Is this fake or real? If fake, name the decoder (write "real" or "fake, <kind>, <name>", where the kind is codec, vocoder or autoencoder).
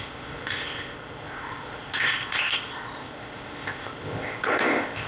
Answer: fake, codec, ZipCodec